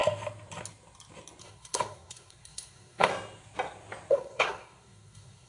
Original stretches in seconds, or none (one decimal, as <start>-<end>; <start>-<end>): 0.0-1.4; 3.1-4.1